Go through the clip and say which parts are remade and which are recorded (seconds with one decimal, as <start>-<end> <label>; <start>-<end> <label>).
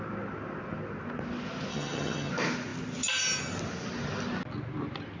0.0-1.7 recorded; 1.7-2.3 remade; 2.3-5.2 recorded